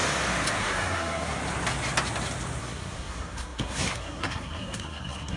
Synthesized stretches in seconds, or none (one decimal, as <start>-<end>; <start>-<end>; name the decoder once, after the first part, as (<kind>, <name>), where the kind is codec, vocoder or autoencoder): 0.6-1.4 (codec, SNAC); 2.6-5.4